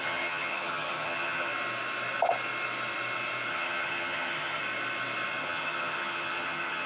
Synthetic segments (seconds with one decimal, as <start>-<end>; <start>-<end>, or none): 0.0-1.5; 3.5-4.6; 5.4-6.9